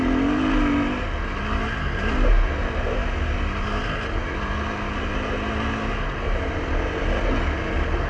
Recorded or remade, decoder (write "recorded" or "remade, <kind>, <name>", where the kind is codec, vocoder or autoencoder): recorded